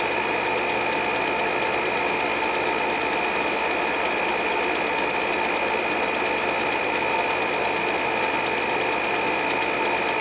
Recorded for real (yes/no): yes